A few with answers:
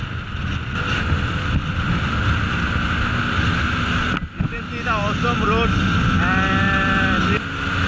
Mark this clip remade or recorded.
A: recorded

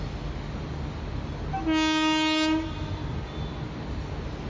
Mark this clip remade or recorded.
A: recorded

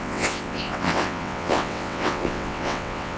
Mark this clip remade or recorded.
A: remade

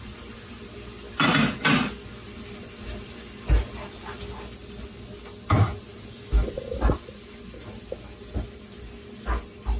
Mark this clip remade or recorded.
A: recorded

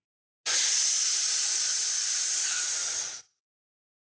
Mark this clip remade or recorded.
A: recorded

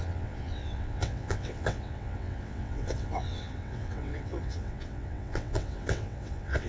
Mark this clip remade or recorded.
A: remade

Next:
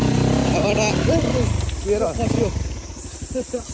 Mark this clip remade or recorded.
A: recorded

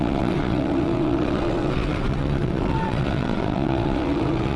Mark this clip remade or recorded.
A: remade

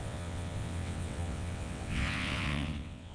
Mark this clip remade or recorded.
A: remade